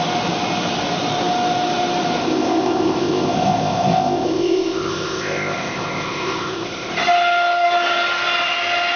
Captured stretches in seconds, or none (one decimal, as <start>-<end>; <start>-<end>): 0.0-2.2; 6.9-9.0